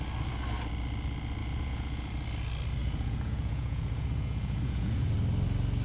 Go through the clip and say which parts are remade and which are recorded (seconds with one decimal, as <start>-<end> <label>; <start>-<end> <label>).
0.0-1.4 recorded; 1.4-2.1 remade; 2.1-2.8 recorded; 2.8-5.1 remade; 5.1-5.8 recorded